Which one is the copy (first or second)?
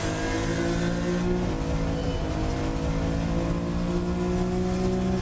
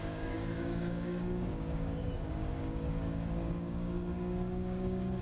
second